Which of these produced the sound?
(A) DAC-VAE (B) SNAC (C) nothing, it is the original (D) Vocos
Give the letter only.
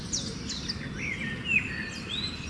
C